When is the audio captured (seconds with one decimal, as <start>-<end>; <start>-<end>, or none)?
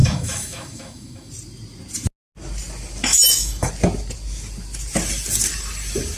1.3-3.1; 3.7-6.2